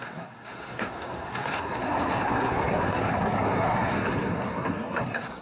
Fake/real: fake